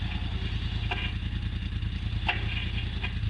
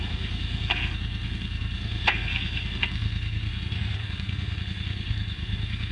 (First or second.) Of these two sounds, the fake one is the second